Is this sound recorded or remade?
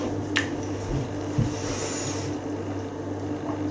recorded